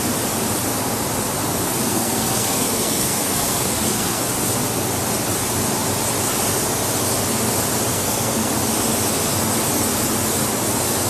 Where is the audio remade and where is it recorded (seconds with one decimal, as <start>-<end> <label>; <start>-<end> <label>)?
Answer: 0.0-1.8 recorded; 1.8-4.3 remade; 4.3-7.9 recorded; 7.9-8.5 remade; 8.5-11.1 recorded